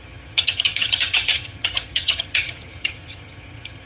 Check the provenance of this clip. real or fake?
fake